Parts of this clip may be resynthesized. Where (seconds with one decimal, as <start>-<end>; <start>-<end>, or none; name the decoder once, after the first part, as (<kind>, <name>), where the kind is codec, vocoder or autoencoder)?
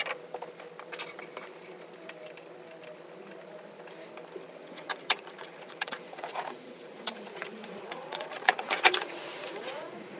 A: 4.6-10.2 (vocoder, Vocos)